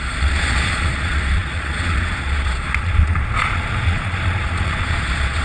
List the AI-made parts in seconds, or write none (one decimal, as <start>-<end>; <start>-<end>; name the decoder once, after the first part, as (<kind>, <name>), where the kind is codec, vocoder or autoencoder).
0.0-5.4 (vocoder, Vocos)